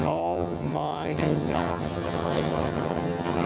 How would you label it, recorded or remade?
remade